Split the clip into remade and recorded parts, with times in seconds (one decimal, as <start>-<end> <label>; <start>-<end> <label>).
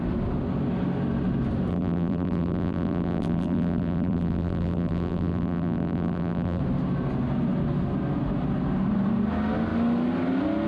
0.0-1.7 recorded; 1.7-6.6 remade; 6.6-10.7 recorded